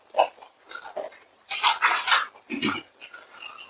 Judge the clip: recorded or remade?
recorded